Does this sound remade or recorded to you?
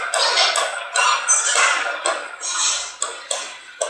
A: recorded